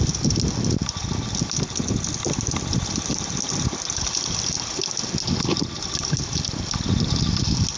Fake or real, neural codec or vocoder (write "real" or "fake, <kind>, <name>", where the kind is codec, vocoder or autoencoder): real